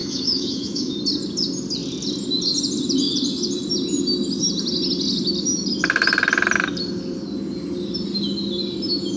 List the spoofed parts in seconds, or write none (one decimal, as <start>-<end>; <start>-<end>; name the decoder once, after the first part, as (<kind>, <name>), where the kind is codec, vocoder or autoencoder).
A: 0.0-1.0 (autoencoder, DAC-VAE)

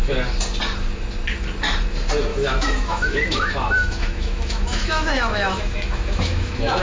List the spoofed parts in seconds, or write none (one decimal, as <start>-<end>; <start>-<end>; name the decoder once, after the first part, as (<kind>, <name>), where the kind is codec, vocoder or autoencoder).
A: 2.3-6.8 (autoencoder, DAC-VAE)